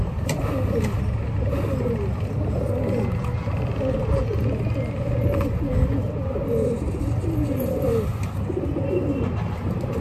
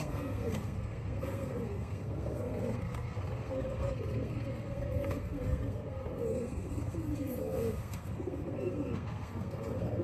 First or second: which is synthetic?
second